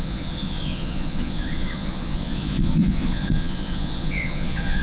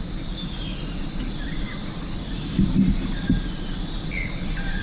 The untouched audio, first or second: second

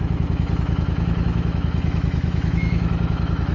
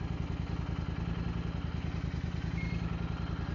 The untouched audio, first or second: second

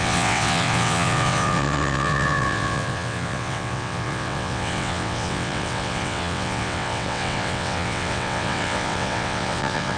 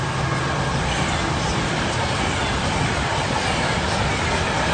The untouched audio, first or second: second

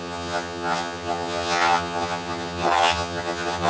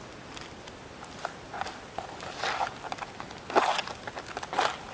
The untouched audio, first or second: second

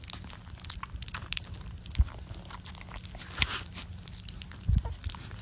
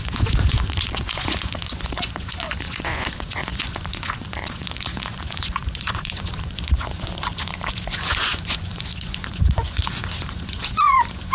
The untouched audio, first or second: first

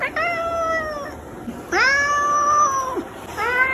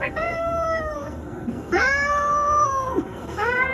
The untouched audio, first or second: first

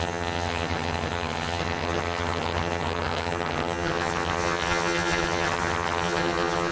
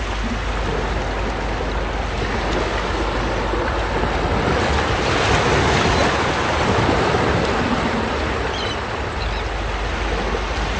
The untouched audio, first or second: second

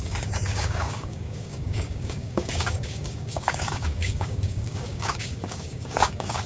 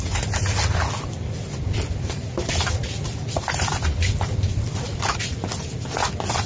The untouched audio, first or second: second